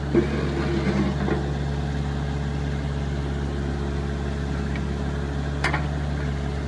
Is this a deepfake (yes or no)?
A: no